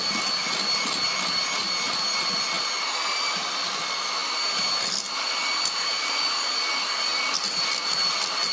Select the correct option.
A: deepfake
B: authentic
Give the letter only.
B